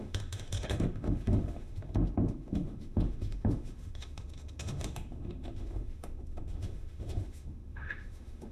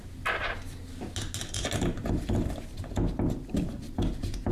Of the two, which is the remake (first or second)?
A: first